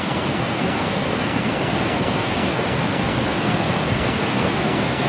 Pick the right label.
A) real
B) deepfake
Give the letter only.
B